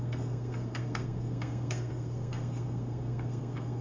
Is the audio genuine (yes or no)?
no